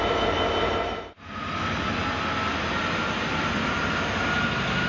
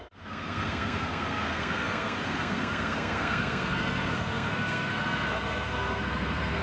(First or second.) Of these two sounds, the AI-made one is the second